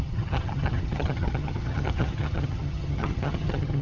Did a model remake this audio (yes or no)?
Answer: yes